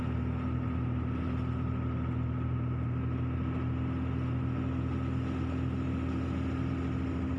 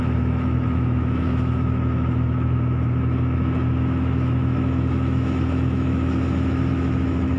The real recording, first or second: first